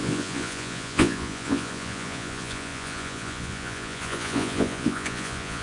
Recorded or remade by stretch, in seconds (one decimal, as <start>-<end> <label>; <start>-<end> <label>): 0.0-5.6 remade